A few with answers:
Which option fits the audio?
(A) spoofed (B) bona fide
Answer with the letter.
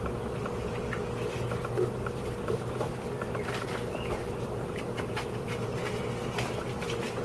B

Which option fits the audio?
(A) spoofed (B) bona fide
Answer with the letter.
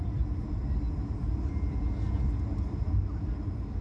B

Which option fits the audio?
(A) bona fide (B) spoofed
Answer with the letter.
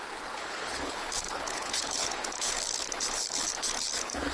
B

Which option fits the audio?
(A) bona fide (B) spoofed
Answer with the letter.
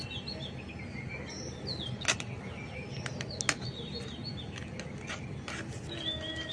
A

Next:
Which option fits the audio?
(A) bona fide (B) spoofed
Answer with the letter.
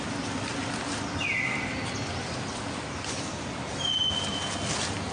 A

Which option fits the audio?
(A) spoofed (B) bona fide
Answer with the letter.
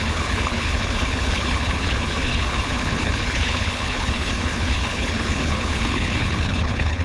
A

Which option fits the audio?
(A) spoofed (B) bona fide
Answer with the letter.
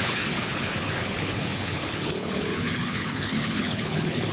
A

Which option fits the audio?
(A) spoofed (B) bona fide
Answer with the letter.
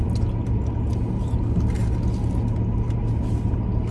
B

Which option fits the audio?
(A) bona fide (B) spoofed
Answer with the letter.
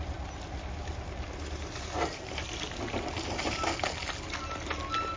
A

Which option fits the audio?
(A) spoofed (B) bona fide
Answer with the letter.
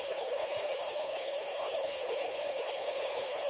A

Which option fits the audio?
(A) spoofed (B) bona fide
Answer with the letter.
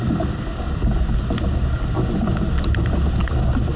B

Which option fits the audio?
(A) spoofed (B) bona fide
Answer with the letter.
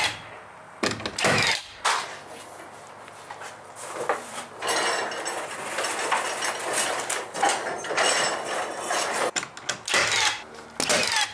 B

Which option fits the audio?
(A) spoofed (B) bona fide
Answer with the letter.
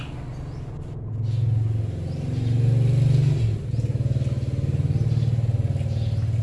B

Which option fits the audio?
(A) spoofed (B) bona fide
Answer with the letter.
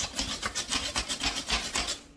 B